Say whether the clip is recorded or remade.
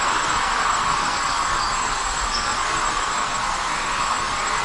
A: remade